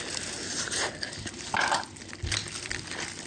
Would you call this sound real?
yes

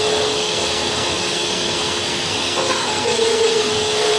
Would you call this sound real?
no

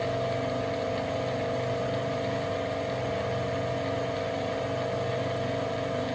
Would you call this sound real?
yes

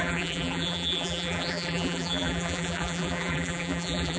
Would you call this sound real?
no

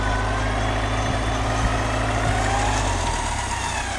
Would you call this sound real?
yes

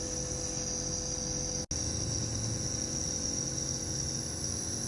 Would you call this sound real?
yes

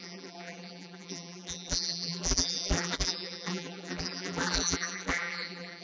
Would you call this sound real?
no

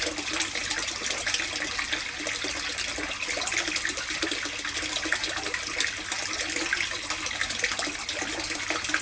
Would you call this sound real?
yes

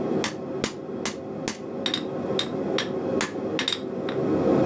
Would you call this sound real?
yes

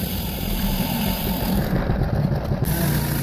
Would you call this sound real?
no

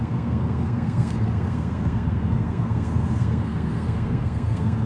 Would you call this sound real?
no